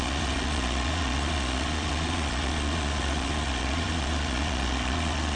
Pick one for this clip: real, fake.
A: fake